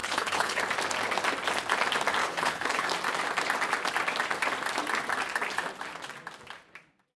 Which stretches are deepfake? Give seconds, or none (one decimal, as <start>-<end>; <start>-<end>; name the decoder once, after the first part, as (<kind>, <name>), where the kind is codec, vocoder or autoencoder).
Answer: 0.0-0.6 (codec, HILCodec); 2.2-2.9

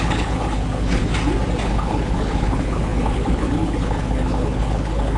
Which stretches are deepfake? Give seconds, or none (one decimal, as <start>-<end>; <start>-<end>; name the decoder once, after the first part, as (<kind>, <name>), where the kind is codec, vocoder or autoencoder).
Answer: 0.0-1.1 (codec, HILCodec); 1.6-5.2

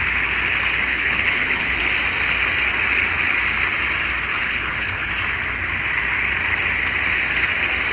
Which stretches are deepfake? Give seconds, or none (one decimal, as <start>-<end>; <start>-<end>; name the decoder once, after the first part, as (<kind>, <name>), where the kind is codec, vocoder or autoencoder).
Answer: 0.9-1.8 (codec, HILCodec); 4.3-5.1

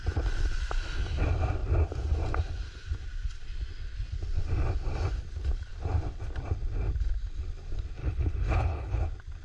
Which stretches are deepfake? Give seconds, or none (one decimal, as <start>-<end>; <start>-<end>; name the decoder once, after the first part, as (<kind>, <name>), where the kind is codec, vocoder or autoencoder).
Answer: 8.0-9.0 (codec, HILCodec)

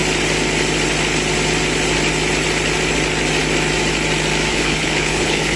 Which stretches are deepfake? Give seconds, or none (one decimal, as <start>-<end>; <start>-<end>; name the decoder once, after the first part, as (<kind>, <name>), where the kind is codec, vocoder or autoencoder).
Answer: 4.5-5.6 (codec, HILCodec)

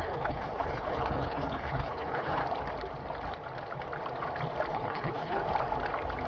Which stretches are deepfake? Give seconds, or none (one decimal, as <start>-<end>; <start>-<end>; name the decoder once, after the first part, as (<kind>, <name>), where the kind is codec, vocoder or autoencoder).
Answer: 0.0-2.4 (codec, HILCodec); 4.7-5.4

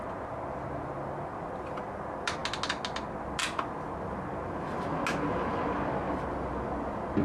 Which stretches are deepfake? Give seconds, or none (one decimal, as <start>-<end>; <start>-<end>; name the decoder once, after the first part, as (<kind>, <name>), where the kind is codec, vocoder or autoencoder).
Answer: none

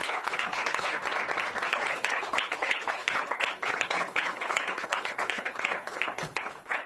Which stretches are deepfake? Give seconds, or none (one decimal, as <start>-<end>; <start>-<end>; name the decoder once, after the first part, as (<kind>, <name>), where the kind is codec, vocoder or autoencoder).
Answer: 0.0-1.0 (codec, HILCodec); 1.7-6.9